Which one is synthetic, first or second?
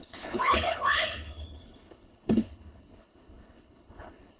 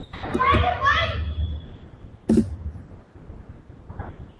first